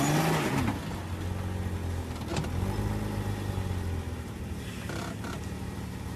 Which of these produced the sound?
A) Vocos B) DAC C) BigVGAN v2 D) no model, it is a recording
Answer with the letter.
D